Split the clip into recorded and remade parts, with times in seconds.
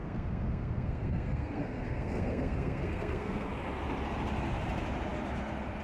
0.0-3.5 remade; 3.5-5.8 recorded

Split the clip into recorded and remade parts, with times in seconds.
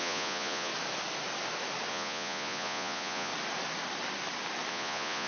0.0-0.7 remade; 0.7-1.9 recorded; 1.9-3.3 remade; 3.3-4.7 recorded; 4.7-5.3 remade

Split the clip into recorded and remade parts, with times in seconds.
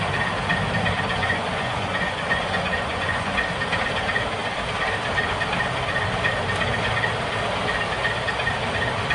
0.0-1.2 recorded; 1.2-3.4 remade; 3.4-9.1 recorded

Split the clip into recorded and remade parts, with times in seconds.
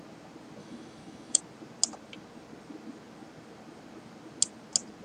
0.0-0.6 recorded; 0.6-1.4 remade; 1.4-5.0 recorded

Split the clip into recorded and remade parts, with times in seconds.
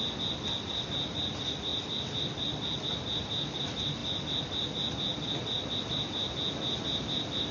0.0-7.5 recorded